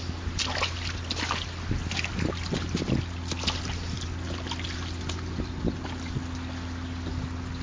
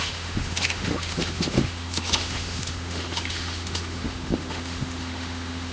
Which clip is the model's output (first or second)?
second